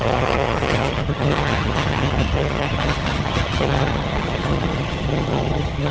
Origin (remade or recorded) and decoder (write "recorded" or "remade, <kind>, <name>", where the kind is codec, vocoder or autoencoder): remade, vocoder, HiFi-GAN